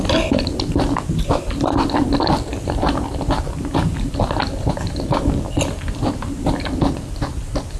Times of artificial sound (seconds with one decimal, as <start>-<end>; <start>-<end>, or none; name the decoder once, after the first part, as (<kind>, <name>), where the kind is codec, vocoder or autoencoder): none